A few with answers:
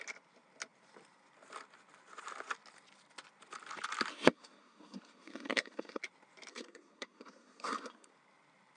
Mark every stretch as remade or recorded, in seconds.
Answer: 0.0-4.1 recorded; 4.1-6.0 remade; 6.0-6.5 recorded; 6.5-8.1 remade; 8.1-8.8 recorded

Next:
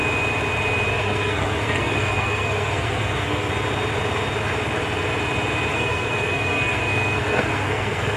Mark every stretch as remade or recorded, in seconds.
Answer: 0.0-0.9 recorded; 0.9-3.5 remade; 3.5-5.7 recorded; 5.7-8.2 remade

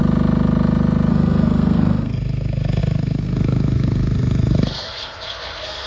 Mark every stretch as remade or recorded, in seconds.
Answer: 0.0-1.1 recorded; 1.1-5.9 remade